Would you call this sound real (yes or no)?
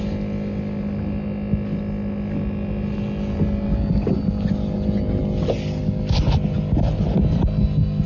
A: yes